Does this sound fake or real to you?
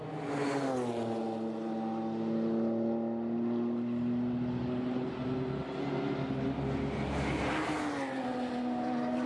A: real